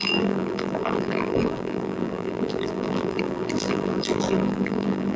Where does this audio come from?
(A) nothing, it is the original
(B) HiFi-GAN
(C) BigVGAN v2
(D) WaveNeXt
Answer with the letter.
C